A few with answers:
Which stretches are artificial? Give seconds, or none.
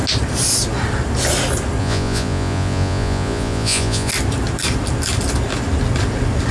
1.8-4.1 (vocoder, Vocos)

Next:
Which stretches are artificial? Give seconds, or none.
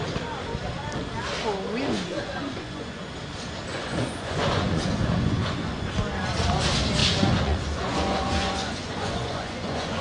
2.1-3.1 (vocoder, Vocos); 3.7-5.9; 7.0-10.0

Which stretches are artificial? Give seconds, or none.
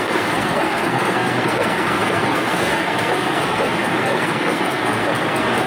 0.0-5.7 (codec, SNAC)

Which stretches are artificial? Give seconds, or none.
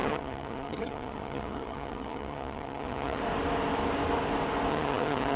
0.0-3.2 (vocoder, HiFi-GAN); 4.7-5.4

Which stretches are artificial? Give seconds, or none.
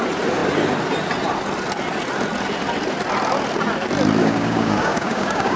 4.2-5.6 (codec, DAC)